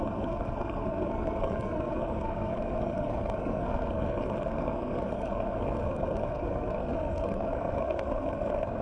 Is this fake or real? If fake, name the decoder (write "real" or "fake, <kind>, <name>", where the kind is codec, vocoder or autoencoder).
fake, codec, SNAC